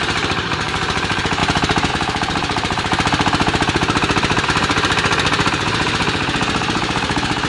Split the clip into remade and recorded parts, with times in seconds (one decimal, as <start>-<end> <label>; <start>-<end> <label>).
0.0-1.4 remade; 1.4-1.9 recorded; 1.9-2.9 remade; 2.9-5.5 recorded; 5.5-7.5 remade